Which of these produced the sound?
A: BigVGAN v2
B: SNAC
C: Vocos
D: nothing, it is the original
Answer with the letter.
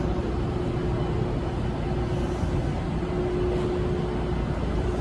D